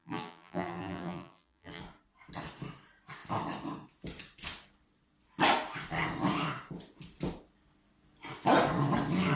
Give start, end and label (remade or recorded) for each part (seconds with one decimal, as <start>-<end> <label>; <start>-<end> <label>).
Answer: 0.0-1.8 remade; 1.8-9.4 recorded